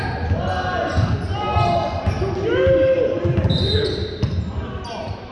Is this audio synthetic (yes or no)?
no